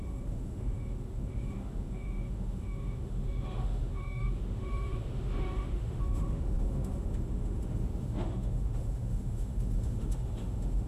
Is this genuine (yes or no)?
no